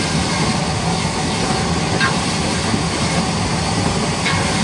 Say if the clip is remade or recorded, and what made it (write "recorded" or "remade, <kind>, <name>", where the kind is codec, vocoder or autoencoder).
recorded